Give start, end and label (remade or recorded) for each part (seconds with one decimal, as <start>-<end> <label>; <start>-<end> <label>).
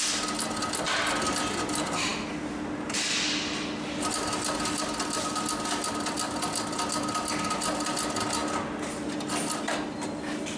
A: 0.0-10.6 recorded